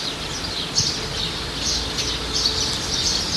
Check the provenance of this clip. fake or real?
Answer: real